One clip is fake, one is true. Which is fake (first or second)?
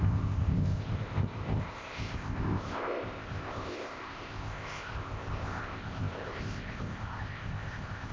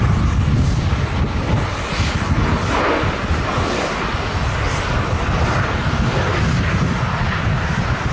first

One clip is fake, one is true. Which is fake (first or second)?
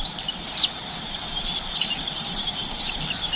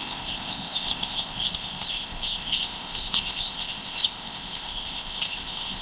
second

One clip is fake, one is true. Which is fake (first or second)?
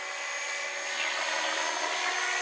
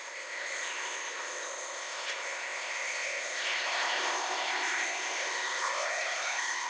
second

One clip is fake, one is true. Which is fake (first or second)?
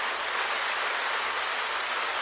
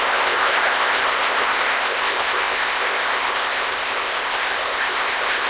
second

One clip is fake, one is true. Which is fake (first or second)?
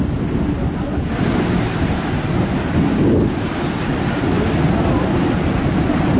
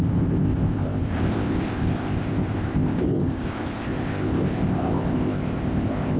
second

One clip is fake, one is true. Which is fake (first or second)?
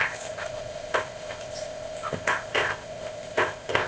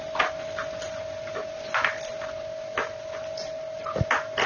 first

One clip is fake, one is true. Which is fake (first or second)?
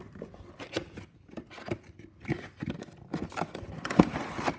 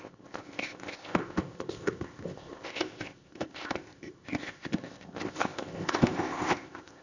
second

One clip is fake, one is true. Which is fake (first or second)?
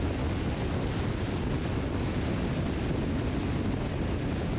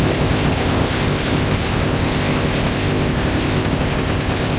second